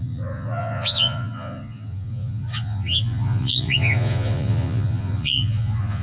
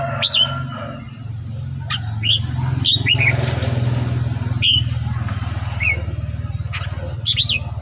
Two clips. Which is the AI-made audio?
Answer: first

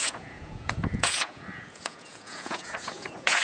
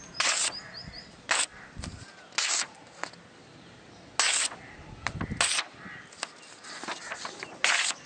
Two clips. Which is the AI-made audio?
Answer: first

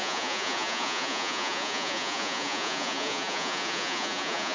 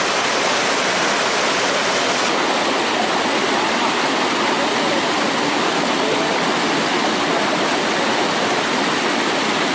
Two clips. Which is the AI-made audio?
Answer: first